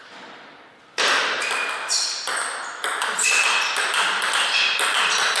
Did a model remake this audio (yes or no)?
no